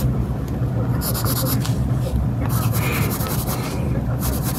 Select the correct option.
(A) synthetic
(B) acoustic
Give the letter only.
B